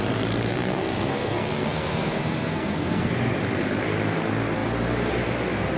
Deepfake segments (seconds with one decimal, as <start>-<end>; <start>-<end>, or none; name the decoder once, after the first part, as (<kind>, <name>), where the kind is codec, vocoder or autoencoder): 0.5-3.1 (codec, SNAC)